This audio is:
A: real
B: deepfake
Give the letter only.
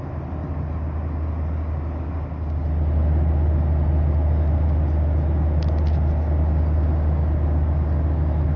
A